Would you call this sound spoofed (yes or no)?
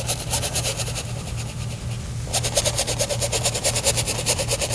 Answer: no